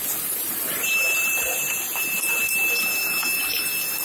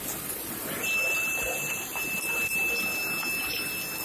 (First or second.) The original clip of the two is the second